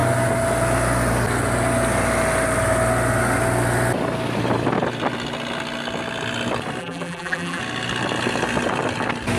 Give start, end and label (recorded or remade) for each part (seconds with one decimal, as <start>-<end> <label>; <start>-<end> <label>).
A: 0.0-6.8 recorded; 6.8-7.6 remade; 7.6-9.4 recorded